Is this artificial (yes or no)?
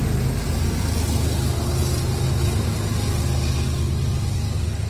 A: no